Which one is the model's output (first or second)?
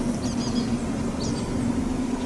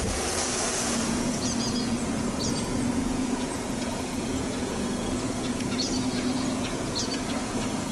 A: second